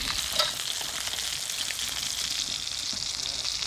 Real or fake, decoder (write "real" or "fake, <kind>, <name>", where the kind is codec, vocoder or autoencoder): real